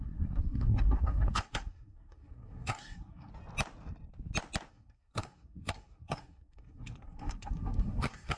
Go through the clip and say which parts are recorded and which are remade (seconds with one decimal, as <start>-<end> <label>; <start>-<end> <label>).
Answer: 0.0-3.3 remade; 3.3-4.7 recorded; 4.7-8.4 remade